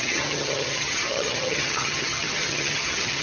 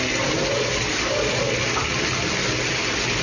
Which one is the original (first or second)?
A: second